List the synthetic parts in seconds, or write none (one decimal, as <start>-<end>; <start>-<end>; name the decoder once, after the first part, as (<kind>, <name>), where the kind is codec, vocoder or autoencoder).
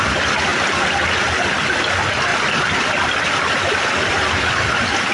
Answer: none